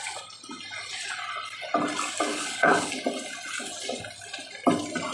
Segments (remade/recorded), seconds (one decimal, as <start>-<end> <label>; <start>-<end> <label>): 0.0-2.3 recorded; 2.3-2.9 remade; 2.9-5.1 recorded